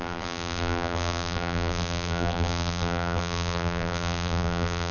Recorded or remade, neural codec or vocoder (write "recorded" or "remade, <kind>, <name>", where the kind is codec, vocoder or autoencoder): remade, vocoder, BigVGAN v2